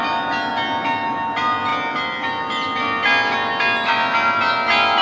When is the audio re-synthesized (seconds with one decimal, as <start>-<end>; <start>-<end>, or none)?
none